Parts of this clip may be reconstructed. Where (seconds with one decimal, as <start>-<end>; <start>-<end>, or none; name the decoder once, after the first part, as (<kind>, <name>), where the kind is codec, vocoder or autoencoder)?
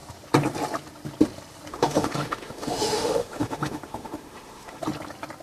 1.7-4.8 (autoencoder, DAC-VAE)